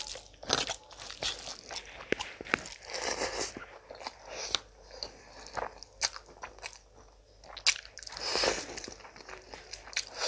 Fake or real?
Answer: real